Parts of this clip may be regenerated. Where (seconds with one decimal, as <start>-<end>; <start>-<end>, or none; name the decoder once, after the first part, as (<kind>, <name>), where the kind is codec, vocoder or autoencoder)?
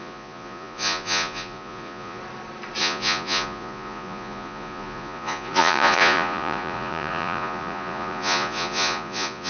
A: 0.0-2.2 (vocoder, Vocos); 2.8-9.5